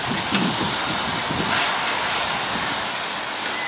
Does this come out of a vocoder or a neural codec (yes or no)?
no